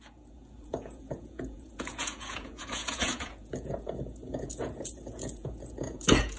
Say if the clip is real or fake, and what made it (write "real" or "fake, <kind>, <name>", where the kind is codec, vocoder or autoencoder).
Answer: fake, vocoder, Vocos